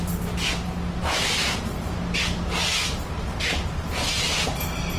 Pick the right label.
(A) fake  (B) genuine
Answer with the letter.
B